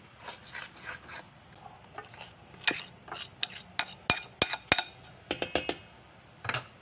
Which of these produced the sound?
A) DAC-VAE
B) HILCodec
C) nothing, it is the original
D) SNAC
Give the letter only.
C